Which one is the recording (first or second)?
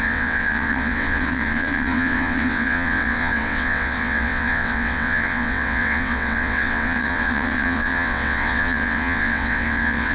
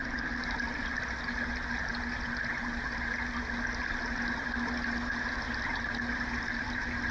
second